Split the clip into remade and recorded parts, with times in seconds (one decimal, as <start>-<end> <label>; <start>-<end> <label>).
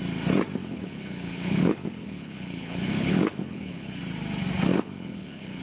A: 0.0-0.6 recorded; 0.6-4.0 remade; 4.0-4.7 recorded; 4.7-5.6 remade